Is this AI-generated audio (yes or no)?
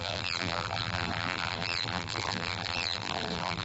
yes